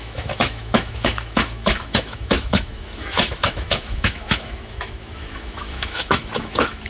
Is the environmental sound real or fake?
fake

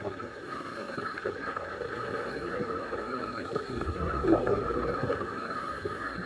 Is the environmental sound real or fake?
fake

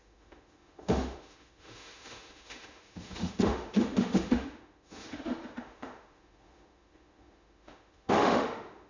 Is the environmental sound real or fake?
fake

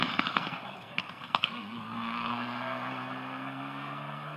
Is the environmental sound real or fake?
fake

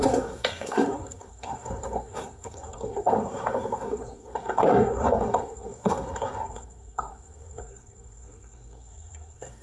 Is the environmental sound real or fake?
fake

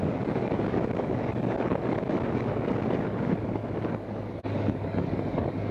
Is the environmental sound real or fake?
fake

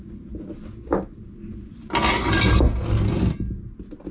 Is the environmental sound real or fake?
real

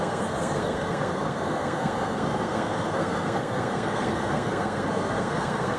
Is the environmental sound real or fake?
fake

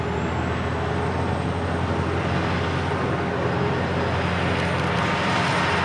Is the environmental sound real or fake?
real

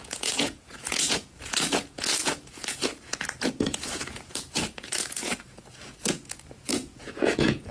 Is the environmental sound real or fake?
fake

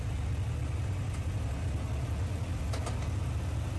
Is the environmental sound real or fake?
real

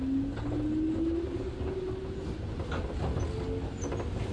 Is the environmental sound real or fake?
real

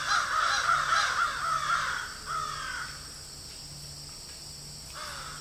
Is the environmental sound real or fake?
real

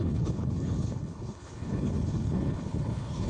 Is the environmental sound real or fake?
fake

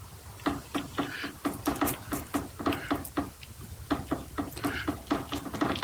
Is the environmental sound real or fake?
real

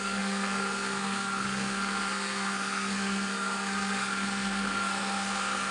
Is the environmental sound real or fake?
fake